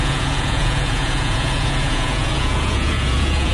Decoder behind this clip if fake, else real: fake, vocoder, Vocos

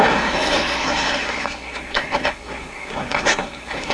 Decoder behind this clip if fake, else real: fake, codec, SNAC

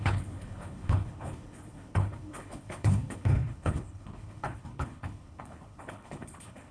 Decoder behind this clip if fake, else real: fake, codec, HILCodec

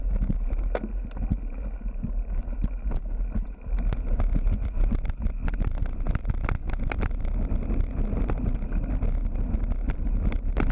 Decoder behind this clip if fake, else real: real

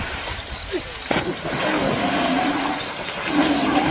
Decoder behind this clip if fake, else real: real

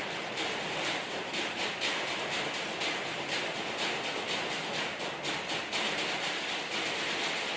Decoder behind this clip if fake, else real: real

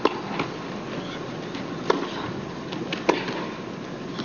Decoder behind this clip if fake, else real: real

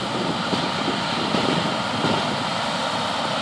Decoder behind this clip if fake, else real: fake, vocoder, BigVGAN v2